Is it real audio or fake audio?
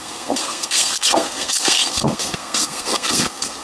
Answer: fake